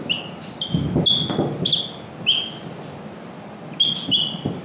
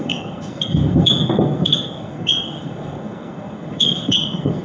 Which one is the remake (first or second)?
second